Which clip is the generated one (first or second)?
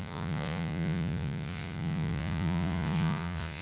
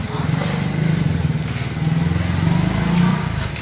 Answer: first